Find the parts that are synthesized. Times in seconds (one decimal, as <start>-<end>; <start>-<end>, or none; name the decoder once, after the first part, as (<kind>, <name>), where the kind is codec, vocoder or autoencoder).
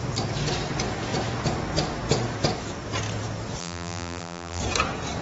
3.6-4.6 (vocoder, BigVGAN v2)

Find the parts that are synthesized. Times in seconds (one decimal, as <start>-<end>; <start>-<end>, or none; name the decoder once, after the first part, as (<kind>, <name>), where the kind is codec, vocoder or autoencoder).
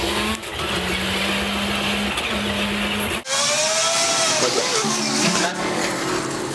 0.0-0.5 (codec, DAC); 4.4-5.8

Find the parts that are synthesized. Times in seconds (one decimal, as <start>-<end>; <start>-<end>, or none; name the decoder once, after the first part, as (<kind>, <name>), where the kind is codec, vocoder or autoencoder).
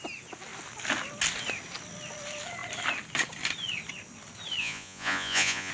4.6-5.7 (vocoder, Vocos)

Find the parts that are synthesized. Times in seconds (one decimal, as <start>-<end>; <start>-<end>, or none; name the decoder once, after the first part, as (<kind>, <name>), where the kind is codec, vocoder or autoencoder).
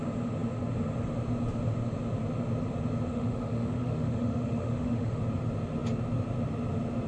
3.1-5.2 (autoencoder, DAC-VAE)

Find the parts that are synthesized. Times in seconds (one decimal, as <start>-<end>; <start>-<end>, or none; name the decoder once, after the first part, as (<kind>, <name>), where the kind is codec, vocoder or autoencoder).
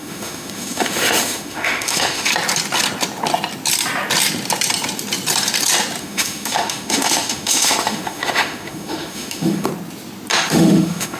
0.0-2.3 (autoencoder, DAC-VAE); 6.0-9.7; 10.5-11.2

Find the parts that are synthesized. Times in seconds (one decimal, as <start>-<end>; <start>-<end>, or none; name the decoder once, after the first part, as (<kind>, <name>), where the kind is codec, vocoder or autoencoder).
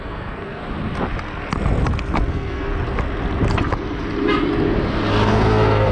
0.0-0.6 (codec, SNAC); 2.3-2.7; 5.3-5.9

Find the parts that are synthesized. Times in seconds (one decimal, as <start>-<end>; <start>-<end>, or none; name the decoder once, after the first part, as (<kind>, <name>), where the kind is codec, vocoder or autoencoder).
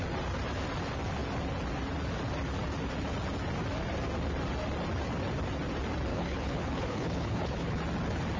6.1-7.8 (codec, HILCodec)